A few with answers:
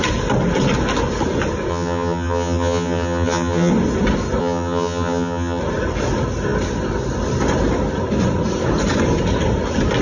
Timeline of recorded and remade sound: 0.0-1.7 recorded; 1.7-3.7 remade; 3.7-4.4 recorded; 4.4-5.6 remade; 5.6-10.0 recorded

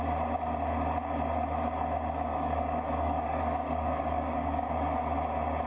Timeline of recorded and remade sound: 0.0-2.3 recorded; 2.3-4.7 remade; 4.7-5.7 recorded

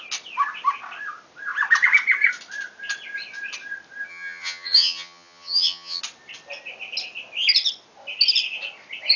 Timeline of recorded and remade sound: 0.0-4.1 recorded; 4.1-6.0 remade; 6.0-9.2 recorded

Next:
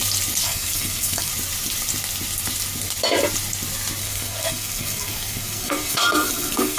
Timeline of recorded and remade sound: 0.0-0.4 recorded; 0.4-1.3 remade; 1.3-4.0 recorded; 4.0-6.8 remade

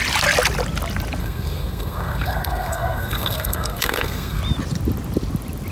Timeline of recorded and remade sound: 0.0-1.2 recorded; 1.2-4.4 remade; 4.4-5.7 recorded